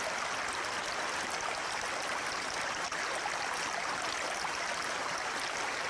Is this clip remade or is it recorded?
recorded